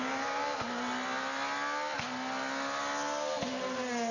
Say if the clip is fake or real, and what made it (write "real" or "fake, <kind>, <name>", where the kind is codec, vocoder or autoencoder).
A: real